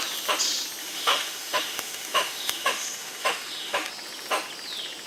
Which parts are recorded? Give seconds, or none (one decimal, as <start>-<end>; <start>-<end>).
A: 0.0-0.8; 3.9-5.1